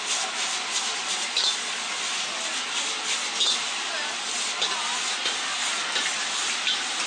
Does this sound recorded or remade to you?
recorded